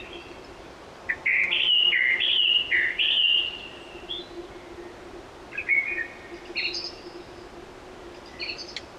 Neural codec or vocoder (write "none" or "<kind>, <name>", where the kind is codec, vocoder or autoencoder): none